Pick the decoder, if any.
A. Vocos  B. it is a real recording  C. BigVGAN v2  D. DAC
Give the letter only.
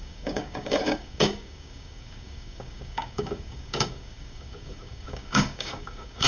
D